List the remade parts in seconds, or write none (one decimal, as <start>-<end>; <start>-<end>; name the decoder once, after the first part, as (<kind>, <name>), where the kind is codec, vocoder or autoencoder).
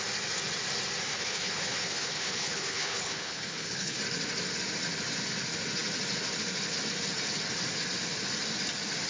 1.1-4.0 (codec, HILCodec)